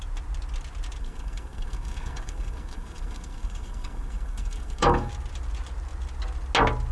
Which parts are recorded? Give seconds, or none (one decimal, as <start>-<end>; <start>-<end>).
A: 0.0-1.0; 5.1-6.9